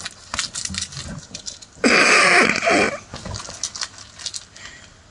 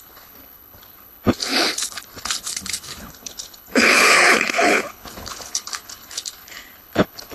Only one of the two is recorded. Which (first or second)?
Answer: first